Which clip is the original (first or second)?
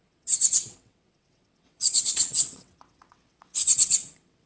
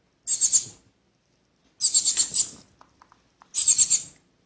second